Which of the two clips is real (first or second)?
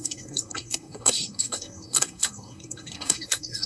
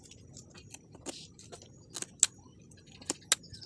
second